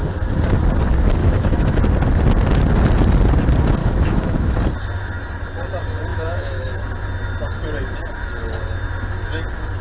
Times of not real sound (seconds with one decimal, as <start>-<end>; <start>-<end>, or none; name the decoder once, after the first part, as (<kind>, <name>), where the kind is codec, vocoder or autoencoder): 1.2-1.8 (autoencoder, DAC-VAE); 3.8-4.6; 6.1-6.7